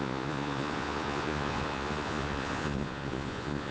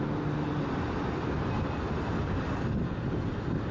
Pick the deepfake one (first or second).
first